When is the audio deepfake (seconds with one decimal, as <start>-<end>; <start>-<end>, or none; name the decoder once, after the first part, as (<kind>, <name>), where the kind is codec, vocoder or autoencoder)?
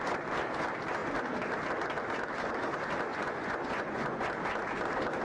3.1-4.3 (vocoder, Vocos)